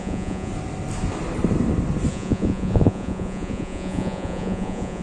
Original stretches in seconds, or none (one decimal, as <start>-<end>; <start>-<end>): 0.5-2.1